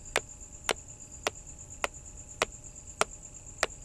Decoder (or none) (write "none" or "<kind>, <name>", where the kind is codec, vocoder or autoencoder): none